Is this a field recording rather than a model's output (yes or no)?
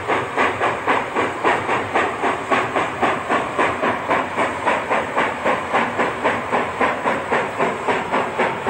no